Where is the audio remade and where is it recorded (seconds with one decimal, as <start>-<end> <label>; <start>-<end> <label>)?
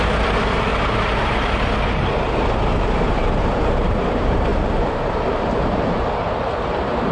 0.0-0.7 remade; 0.7-2.8 recorded; 2.8-7.1 remade